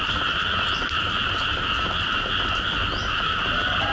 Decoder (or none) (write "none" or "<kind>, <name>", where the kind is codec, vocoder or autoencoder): none